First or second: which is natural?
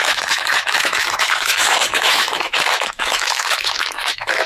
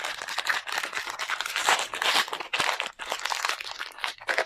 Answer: second